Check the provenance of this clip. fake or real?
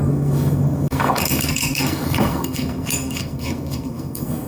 fake